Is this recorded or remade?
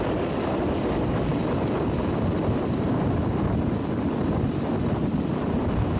recorded